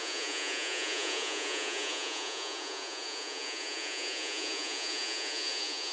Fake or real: fake